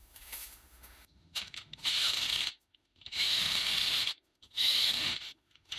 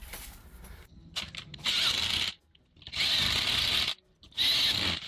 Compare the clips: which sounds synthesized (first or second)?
first